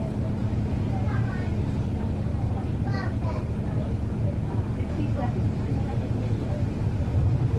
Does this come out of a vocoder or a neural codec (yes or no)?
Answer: yes